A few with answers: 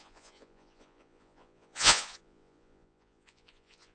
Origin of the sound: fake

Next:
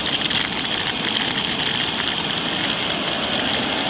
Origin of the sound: real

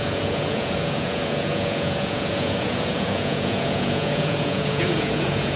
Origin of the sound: fake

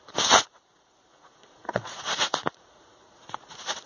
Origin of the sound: fake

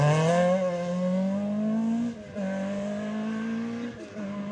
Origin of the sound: real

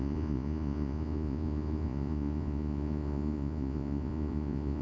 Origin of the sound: fake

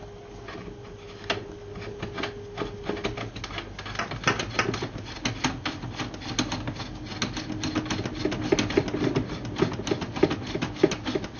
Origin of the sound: real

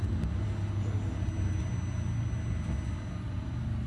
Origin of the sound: real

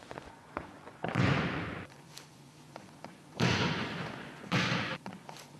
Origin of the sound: fake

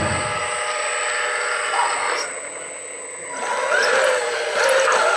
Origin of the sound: real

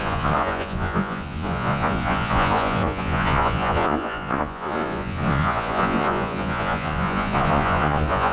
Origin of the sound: fake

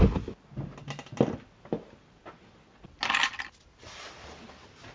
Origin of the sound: real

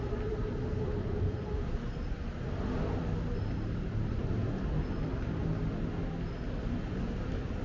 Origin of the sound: real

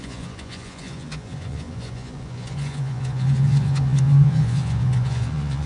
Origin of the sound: fake